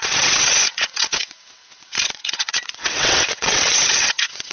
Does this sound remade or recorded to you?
remade